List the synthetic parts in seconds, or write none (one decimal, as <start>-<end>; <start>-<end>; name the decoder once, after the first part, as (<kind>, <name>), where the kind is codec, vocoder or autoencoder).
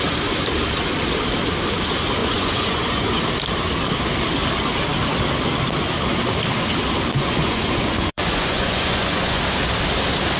2.2-3.2 (vocoder, Vocos); 7.1-9.4